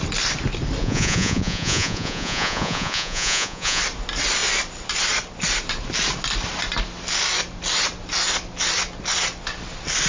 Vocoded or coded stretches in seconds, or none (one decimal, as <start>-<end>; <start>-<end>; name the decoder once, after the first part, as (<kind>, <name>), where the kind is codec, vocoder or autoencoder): 0.8-3.8 (vocoder, Vocos)